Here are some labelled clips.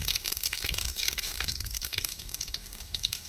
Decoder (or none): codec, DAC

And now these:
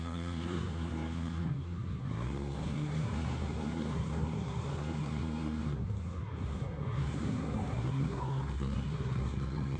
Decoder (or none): codec, SNAC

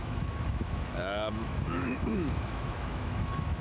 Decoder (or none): autoencoder, DAC-VAE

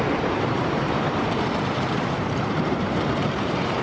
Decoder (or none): vocoder, BigVGAN v2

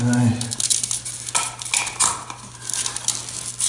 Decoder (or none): none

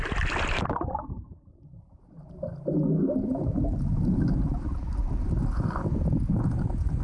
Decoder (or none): none